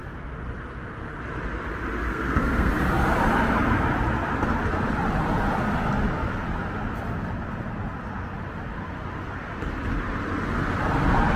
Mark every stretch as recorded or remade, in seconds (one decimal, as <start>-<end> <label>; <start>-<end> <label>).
0.0-2.1 recorded; 2.1-2.7 remade; 2.7-11.4 recorded